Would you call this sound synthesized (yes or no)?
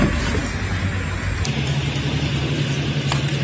no